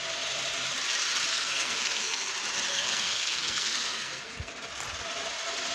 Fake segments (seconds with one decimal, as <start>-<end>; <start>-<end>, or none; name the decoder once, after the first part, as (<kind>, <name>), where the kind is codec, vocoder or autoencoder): 1.3-2.3 (codec, SNAC); 2.7-4.5